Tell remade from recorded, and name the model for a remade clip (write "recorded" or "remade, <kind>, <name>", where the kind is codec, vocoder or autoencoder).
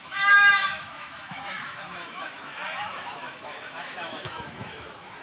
remade, autoencoder, DAC-VAE